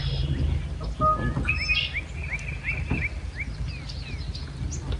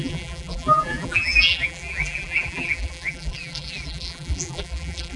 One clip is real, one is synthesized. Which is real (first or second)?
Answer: first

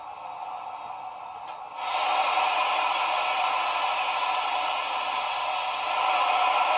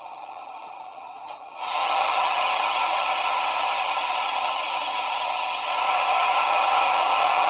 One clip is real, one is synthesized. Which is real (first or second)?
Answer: first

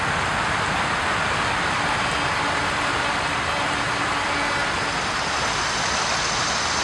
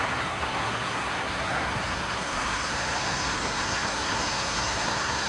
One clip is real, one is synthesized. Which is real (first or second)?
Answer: first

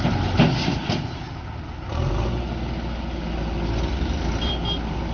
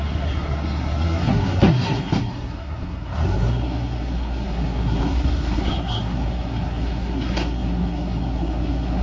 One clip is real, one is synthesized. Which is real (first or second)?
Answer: first